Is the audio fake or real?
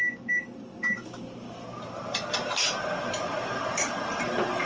real